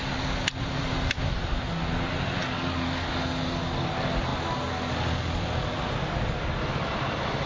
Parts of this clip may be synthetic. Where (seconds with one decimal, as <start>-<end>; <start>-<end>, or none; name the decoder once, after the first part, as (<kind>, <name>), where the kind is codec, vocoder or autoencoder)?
0.0-1.7 (vocoder, BigVGAN v2)